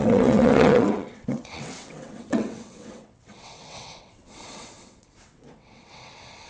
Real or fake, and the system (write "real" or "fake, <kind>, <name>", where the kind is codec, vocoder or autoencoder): fake, vocoder, WaveNeXt